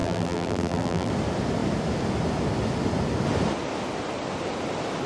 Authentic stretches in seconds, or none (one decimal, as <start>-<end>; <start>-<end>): 1.1-5.1